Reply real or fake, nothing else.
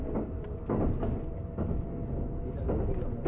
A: real